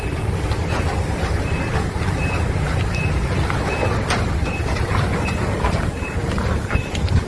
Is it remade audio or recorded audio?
recorded